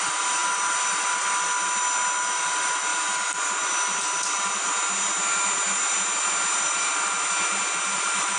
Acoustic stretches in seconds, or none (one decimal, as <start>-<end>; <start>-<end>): 0.0-8.4